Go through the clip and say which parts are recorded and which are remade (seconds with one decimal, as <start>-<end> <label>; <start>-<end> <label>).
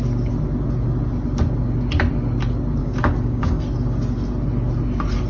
0.0-2.8 recorded; 2.8-3.6 remade; 3.6-5.3 recorded